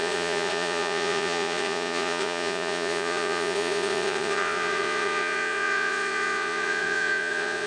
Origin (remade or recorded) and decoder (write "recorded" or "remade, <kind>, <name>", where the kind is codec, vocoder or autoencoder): remade, vocoder, Vocos